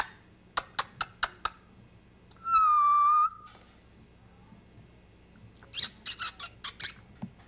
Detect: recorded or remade recorded